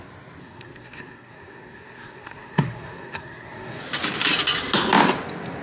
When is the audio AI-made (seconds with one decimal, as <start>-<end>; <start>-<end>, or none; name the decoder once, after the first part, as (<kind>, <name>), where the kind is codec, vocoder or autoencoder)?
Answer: 0.4-3.8 (codec, SNAC)